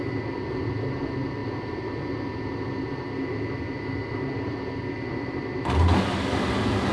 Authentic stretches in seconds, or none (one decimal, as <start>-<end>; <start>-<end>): 0.0-6.9